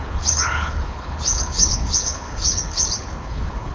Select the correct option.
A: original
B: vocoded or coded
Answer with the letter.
B